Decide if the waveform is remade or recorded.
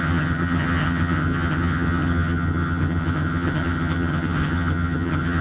remade